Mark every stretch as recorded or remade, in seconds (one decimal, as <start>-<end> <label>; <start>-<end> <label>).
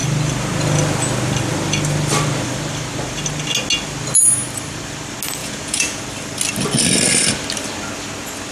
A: 0.0-5.4 recorded; 5.4-6.0 remade; 6.0-8.5 recorded